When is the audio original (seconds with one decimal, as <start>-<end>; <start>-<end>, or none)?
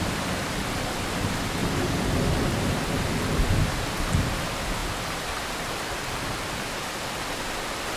0.0-8.0